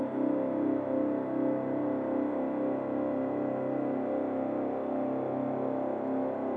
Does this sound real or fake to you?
real